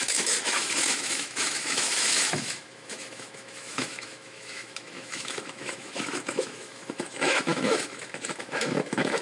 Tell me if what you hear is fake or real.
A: fake